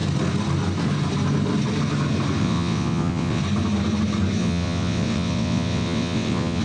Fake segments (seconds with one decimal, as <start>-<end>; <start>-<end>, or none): 2.4-3.4; 4.4-6.6